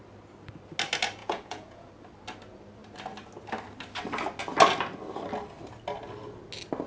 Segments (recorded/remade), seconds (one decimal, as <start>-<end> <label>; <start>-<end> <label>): 0.0-1.2 recorded; 1.2-1.9 remade; 1.9-6.9 recorded